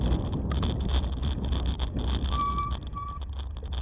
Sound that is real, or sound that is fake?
real